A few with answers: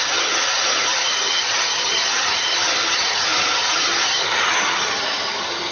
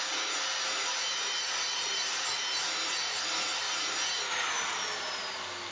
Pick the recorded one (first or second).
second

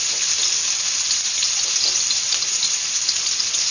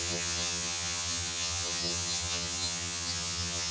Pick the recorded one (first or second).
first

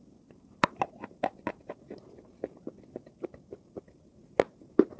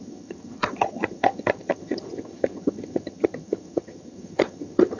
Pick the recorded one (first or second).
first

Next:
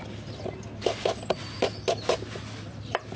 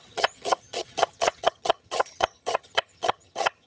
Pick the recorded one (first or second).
first